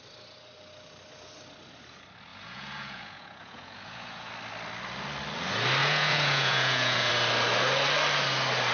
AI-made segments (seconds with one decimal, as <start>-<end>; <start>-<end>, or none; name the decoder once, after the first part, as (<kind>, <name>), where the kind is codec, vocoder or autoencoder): 2.3-4.3 (vocoder, Vocos); 5.8-7.1